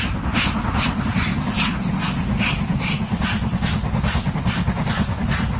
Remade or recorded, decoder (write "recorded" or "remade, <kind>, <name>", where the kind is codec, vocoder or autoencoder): recorded